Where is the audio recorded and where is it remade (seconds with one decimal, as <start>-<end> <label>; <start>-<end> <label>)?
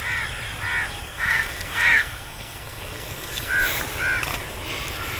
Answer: 0.0-1.0 recorded; 1.0-3.5 remade; 3.5-5.2 recorded